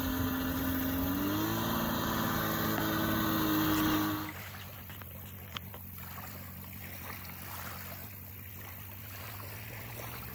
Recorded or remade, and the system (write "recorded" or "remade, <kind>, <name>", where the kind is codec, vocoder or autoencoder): recorded